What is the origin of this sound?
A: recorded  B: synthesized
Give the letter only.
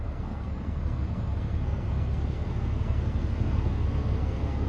B